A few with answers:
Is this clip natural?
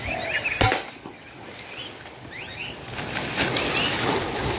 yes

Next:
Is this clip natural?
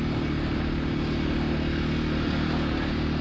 yes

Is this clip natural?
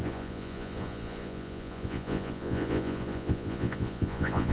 no